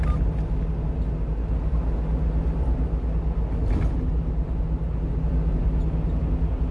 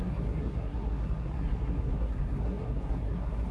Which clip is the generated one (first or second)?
second